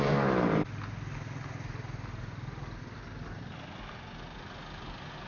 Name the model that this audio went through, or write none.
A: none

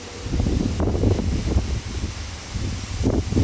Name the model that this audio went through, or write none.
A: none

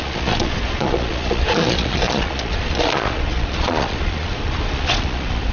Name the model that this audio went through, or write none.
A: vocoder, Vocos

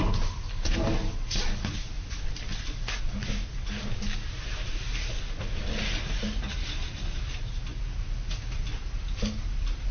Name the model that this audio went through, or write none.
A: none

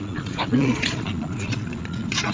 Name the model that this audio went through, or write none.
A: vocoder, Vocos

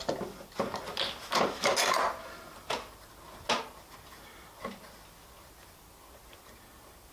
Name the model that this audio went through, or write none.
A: none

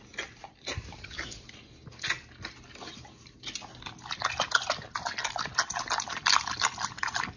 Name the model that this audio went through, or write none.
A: none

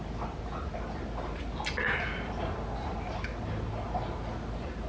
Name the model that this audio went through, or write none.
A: none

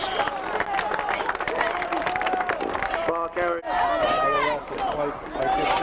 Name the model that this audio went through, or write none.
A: none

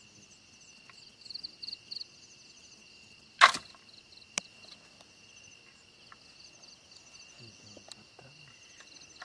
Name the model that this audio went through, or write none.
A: none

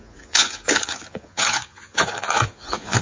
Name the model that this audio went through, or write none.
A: vocoder, Vocos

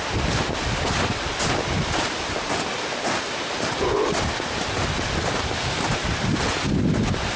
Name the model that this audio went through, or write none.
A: none